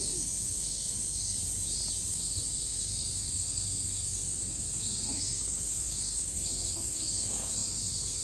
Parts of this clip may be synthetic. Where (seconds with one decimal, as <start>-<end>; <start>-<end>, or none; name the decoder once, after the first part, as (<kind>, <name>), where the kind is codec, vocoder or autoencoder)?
0.0-1.4 (codec, SNAC); 2.1-8.2